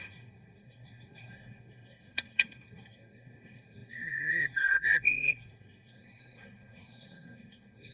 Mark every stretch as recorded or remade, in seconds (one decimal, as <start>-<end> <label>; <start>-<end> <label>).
0.0-7.9 remade